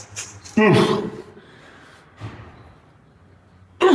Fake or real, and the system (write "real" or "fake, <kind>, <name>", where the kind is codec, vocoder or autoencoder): real